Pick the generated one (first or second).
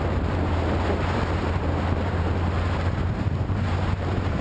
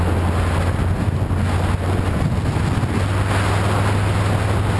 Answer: first